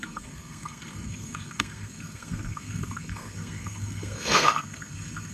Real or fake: fake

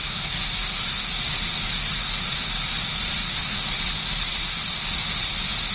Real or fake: real